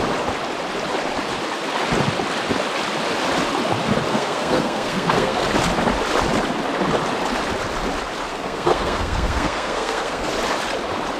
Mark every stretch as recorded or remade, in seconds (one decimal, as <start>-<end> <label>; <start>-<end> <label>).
0.0-4.1 recorded; 4.1-5.4 remade; 5.4-8.3 recorded; 8.3-10.3 remade; 10.3-11.2 recorded